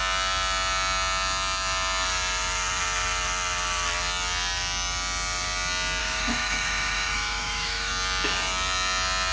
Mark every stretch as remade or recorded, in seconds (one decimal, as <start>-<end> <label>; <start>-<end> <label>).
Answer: 0.0-6.0 recorded; 6.0-7.9 remade; 7.9-9.3 recorded